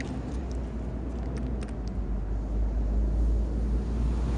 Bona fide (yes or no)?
yes